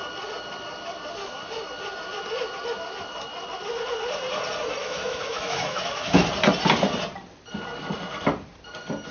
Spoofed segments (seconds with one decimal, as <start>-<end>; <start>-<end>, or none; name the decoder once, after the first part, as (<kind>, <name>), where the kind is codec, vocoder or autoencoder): 4.8-6.2 (autoencoder, DAC-VAE)